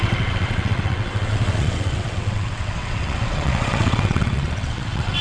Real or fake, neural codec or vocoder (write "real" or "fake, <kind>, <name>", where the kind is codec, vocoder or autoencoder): fake, vocoder, WaveNeXt